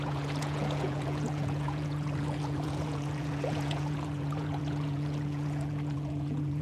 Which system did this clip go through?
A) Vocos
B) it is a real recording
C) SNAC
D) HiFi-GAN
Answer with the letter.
A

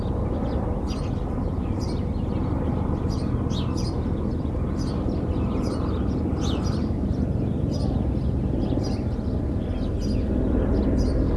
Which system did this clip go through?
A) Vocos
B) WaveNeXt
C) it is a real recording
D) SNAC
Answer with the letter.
C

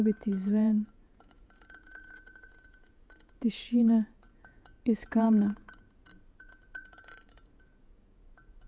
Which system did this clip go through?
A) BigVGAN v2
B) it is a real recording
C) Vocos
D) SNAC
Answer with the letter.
C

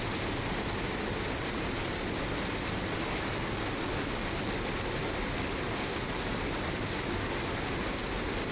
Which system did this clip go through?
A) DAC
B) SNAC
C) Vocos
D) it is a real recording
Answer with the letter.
D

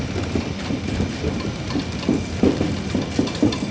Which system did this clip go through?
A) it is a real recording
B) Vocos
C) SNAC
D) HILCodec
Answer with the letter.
A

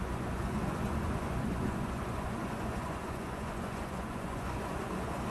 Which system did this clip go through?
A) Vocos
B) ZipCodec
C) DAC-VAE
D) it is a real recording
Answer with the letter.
A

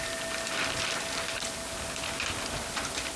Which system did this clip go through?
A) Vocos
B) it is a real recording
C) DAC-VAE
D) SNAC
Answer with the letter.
B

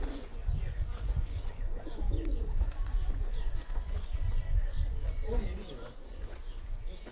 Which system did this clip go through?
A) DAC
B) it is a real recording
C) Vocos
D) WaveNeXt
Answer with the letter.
C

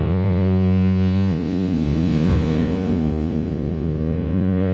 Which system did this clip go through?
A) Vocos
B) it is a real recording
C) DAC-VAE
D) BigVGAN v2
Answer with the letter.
A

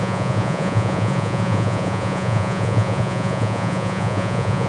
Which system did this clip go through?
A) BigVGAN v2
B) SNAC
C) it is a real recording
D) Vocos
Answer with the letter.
D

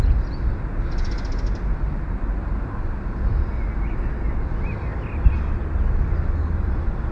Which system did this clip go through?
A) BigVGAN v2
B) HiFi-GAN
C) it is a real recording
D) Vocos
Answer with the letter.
C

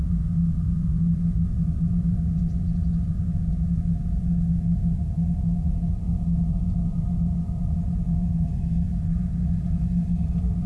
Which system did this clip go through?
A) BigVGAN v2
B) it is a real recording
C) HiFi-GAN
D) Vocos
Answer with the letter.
B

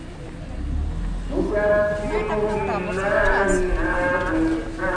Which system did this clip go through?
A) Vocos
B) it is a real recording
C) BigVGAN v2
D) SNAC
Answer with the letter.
B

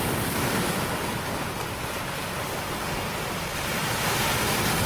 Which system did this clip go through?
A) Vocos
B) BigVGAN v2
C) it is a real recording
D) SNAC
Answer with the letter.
C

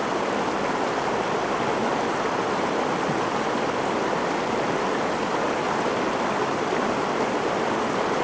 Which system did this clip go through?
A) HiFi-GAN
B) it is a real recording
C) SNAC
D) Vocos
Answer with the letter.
B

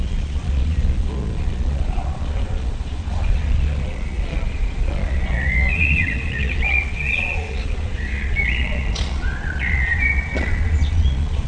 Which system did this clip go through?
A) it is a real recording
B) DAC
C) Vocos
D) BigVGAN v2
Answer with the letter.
C